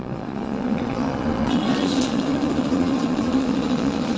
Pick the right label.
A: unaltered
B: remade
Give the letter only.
B